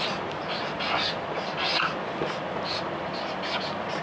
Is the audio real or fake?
real